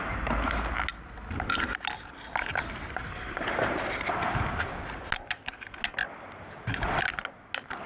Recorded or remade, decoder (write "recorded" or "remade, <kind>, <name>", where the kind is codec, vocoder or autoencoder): recorded